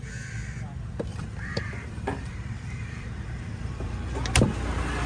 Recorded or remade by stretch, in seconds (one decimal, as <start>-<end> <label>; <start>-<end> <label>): 0.0-1.1 recorded; 1.1-4.2 remade; 4.2-5.1 recorded